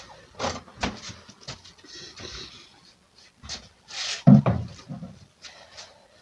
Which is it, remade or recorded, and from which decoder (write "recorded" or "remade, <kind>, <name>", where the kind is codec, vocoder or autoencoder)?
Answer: recorded